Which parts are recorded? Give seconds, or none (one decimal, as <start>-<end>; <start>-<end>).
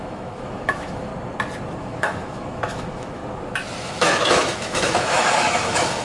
1.1-1.8; 3.2-3.8